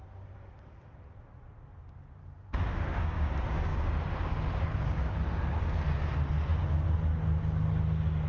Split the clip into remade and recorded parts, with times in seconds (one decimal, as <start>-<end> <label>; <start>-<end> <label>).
0.0-2.2 recorded; 2.2-3.3 remade; 3.3-3.7 recorded; 3.7-5.4 remade; 5.4-8.3 recorded